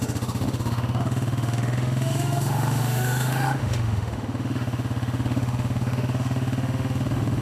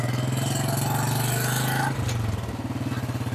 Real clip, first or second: second